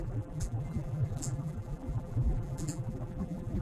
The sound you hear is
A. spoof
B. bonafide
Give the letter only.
A